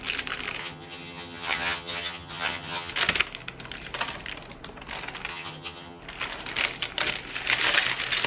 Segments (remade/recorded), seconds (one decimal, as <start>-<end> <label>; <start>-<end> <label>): 0.0-0.6 recorded; 0.6-2.9 remade; 2.9-5.3 recorded; 5.3-6.0 remade; 6.0-8.3 recorded